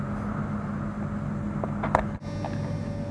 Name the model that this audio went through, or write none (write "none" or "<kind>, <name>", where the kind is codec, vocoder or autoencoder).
none